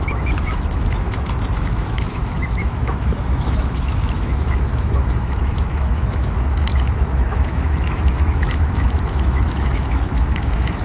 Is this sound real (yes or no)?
no